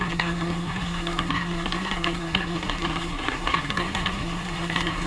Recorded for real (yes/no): no